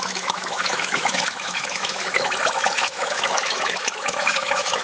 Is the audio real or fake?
fake